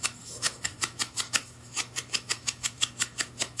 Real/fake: fake